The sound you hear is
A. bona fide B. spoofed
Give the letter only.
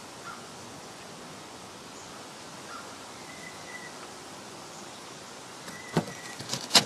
B